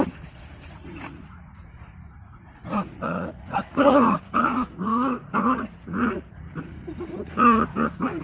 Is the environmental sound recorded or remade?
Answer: remade